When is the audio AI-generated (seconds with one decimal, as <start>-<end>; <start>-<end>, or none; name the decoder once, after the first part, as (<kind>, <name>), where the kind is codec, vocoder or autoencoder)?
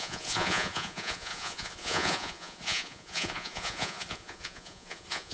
0.0-5.3 (vocoder, Vocos)